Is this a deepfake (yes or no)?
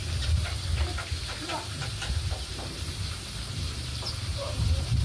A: yes